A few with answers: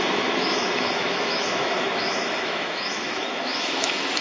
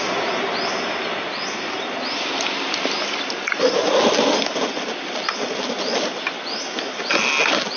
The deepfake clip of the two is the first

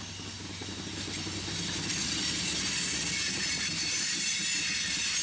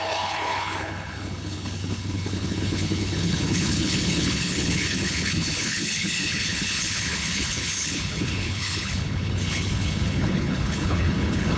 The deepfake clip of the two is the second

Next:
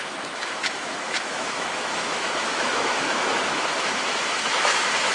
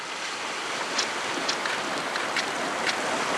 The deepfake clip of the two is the first